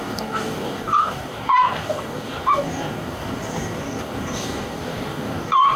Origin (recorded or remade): remade